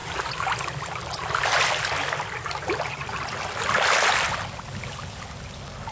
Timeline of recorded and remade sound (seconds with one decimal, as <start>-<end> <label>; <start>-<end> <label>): 0.0-5.9 recorded